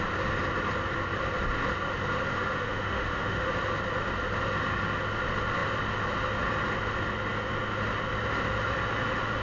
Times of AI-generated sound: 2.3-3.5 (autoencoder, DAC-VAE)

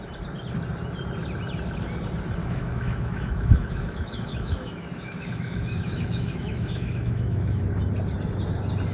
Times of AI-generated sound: 2.4-7.6 (autoencoder, DAC-VAE)

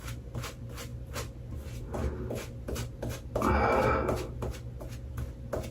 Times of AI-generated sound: none